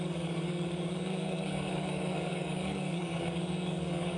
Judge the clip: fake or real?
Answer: fake